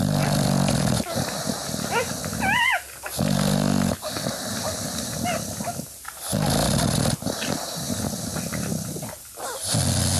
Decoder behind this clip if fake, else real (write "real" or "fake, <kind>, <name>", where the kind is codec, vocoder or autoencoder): real